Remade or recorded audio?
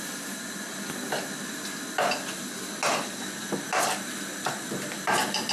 recorded